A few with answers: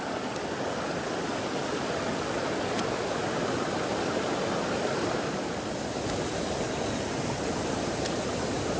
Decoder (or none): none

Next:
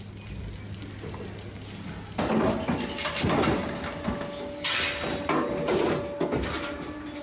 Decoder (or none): none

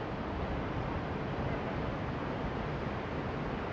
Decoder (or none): none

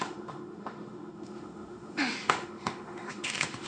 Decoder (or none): autoencoder, DAC-VAE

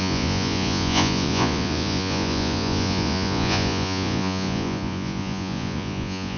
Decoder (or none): vocoder, Vocos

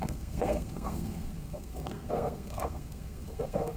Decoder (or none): codec, SNAC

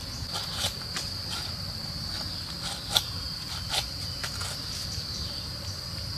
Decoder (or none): none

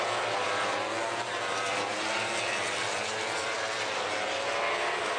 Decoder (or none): vocoder, BigVGAN v2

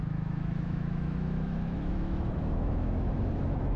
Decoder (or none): autoencoder, DAC-VAE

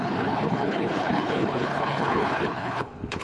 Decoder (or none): codec, HILCodec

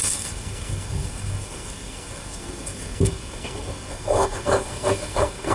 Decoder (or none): codec, SNAC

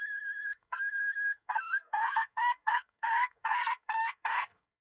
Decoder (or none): codec, SNAC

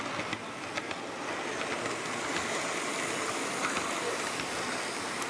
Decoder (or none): none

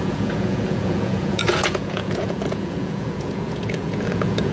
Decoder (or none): vocoder, Vocos